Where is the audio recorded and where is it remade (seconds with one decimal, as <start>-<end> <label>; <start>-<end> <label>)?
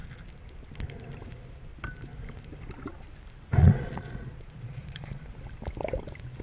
0.0-3.6 recorded; 3.6-5.2 remade; 5.2-6.4 recorded